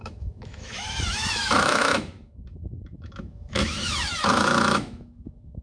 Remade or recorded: remade